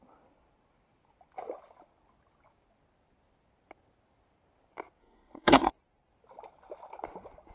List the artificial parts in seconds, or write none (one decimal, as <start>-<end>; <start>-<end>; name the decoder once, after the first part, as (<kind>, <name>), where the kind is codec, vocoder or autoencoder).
5.0-5.7 (codec, SNAC)